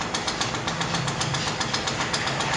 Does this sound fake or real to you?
real